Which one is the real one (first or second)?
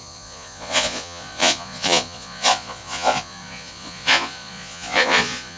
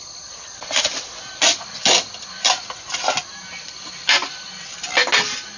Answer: second